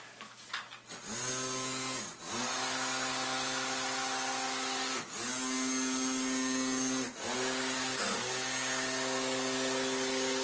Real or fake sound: real